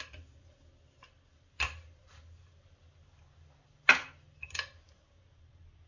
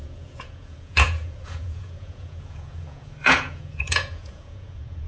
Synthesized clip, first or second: second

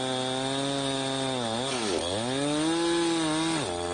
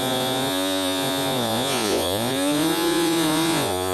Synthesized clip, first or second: second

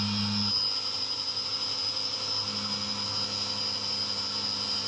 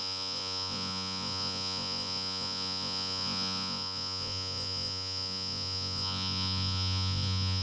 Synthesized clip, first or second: second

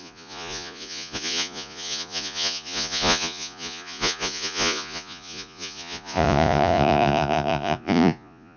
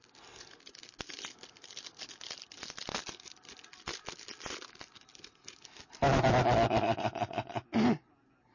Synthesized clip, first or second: first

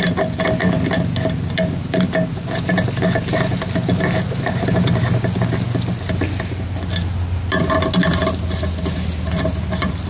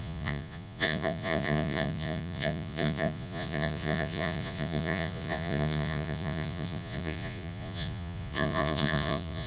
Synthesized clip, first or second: second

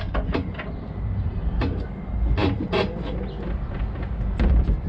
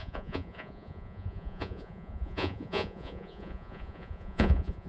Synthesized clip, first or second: second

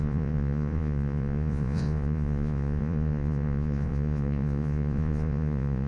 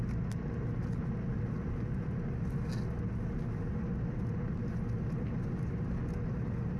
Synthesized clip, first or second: first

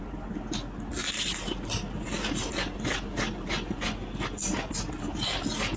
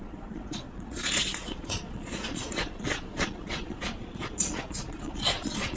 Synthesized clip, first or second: second